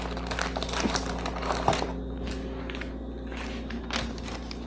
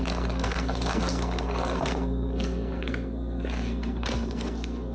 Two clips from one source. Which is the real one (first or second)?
first